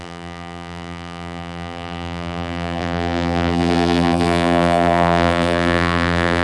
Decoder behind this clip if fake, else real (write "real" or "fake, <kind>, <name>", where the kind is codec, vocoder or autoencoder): fake, vocoder, BigVGAN v2